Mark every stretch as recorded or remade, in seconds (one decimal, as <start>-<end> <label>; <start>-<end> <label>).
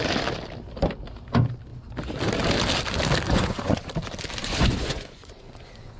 0.0-3.3 recorded; 3.3-3.9 remade; 3.9-4.4 recorded; 4.4-6.0 remade